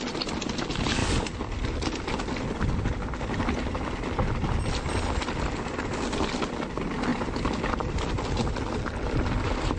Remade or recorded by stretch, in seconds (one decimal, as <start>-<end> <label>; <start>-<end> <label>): 0.0-9.8 recorded